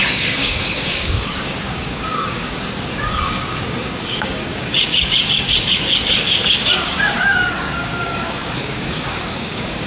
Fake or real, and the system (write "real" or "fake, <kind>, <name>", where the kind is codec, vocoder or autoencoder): fake, codec, DAC